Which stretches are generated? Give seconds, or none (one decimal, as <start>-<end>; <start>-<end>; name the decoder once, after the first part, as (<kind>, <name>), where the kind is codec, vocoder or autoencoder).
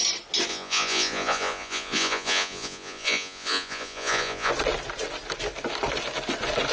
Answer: 0.5-4.5 (vocoder, Vocos)